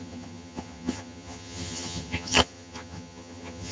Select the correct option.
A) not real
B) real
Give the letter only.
A